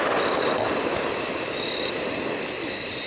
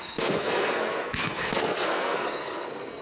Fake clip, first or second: second